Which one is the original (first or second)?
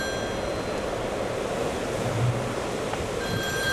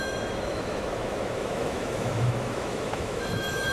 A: first